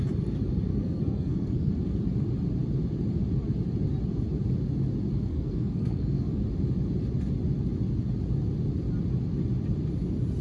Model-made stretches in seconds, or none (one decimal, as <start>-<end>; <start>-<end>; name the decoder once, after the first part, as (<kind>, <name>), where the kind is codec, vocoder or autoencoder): 0.7-1.7 (codec, SNAC); 5.3-6.4